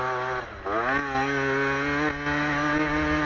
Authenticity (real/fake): real